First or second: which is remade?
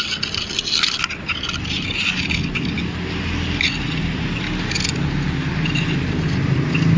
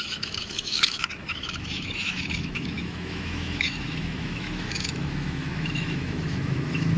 second